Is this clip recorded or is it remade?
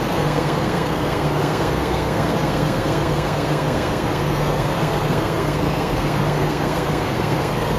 remade